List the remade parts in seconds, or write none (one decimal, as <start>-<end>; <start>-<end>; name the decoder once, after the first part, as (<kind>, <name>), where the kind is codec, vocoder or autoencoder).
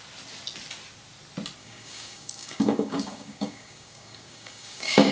1.6-5.1 (codec, DAC)